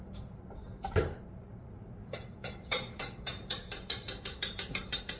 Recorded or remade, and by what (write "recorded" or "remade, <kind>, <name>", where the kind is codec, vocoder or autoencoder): remade, vocoder, BigVGAN v2